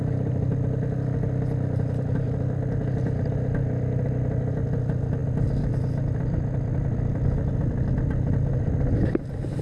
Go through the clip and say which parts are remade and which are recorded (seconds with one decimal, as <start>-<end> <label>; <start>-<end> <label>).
0.0-9.6 recorded